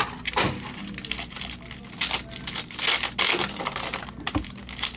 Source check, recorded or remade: recorded